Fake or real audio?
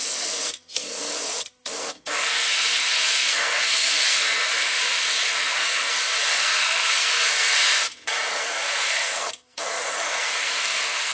fake